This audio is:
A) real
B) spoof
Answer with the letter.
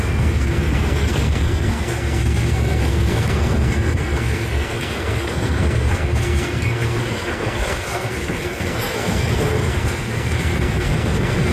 B